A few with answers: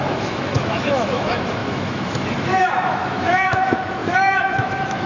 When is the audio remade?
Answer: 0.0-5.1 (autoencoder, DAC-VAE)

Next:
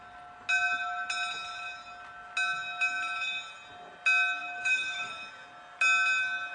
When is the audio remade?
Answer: 4.4-5.1 (autoencoder, DAC-VAE)

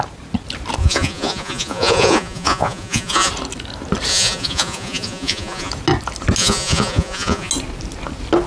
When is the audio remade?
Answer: 0.8-3.3 (vocoder, Vocos); 4.1-5.7; 6.4-7.5